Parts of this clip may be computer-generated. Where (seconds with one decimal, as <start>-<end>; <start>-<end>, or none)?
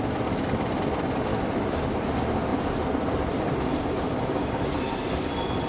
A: 1.3-1.8